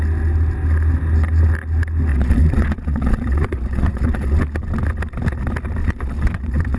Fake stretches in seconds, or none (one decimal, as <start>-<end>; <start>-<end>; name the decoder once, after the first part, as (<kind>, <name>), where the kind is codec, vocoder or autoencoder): 2.1-4.4 (vocoder, Vocos); 5.8-6.8